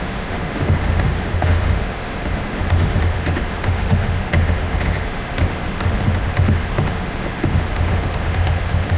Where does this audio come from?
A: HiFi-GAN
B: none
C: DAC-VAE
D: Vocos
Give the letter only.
C